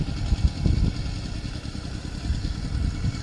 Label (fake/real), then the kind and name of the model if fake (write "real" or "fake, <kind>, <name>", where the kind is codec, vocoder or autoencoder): real